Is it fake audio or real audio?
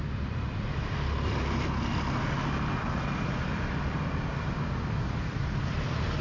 real